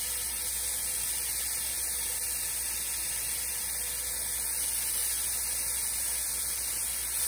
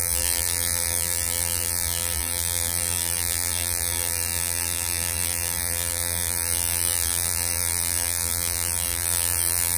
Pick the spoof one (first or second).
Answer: second